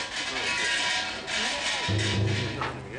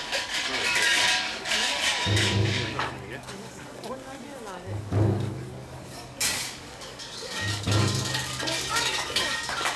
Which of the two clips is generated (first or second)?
second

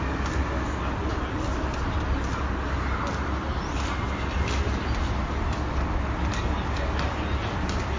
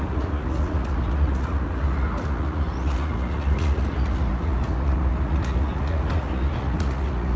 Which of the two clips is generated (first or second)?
second